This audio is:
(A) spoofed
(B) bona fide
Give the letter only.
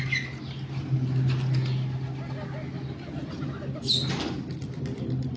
B